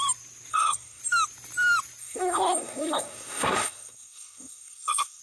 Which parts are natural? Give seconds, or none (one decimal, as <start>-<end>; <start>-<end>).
0.0-0.5; 1.0-2.0